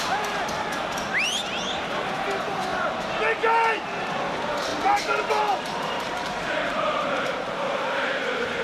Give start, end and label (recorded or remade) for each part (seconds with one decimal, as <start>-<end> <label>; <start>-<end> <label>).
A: 0.0-2.7 remade; 2.7-4.0 recorded; 4.0-4.7 remade; 4.7-5.4 recorded; 5.4-8.6 remade